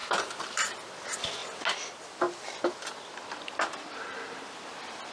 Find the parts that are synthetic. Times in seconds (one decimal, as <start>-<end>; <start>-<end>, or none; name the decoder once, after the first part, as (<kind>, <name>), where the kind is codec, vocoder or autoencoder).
none